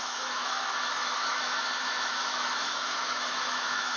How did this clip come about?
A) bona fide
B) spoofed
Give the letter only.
B